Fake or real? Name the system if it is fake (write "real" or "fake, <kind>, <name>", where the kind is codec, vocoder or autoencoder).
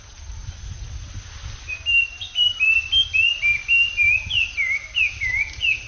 real